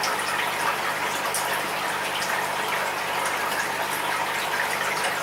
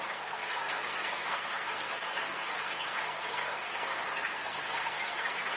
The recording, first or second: first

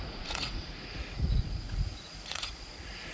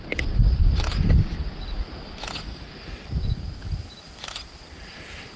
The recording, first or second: second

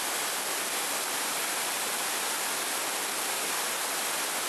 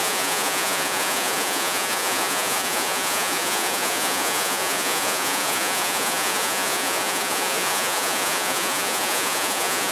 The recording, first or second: first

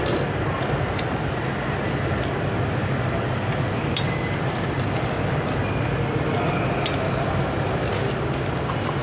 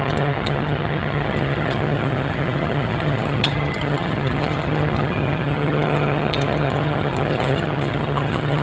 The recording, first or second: first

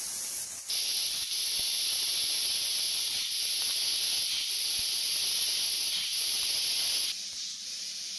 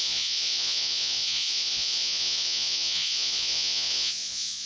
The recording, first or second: first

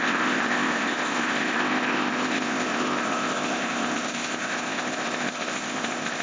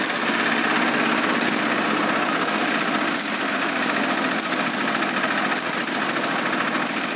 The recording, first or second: second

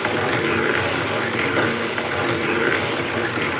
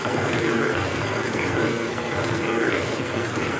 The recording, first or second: first